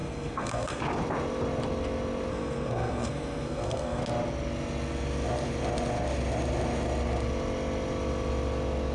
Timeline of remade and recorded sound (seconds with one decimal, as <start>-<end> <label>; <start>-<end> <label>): 0.0-0.8 remade; 0.8-2.3 recorded; 2.3-4.0 remade; 4.0-8.9 recorded